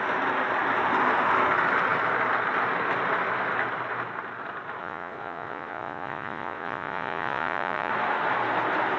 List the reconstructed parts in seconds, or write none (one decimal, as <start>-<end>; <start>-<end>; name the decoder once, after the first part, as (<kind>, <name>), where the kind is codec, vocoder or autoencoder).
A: 4.8-7.9 (vocoder, Vocos)